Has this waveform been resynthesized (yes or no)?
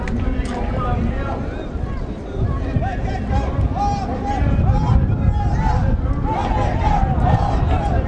no